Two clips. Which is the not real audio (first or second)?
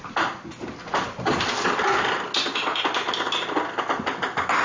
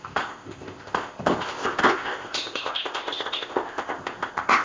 second